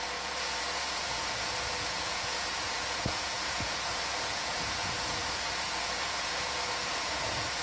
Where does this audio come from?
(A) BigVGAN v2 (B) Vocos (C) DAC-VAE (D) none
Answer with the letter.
B